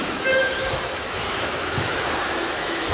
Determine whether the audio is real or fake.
fake